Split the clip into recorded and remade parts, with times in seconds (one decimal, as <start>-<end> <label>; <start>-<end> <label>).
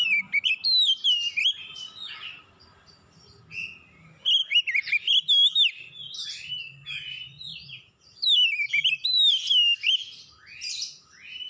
0.0-11.5 recorded